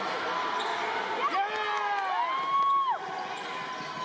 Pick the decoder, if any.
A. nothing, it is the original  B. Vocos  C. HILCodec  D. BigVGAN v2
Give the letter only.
A